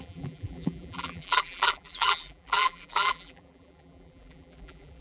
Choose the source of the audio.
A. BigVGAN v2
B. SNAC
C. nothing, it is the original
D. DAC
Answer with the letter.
A